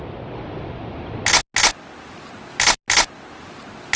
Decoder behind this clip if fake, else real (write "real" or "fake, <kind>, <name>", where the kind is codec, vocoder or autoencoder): real